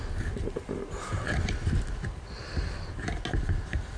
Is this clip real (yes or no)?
yes